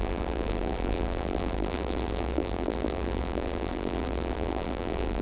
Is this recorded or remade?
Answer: remade